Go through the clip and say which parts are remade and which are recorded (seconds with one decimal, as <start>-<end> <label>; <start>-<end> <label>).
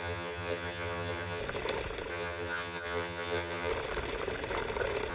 0.0-1.4 remade; 1.4-2.1 recorded; 2.1-3.7 remade; 3.7-5.1 recorded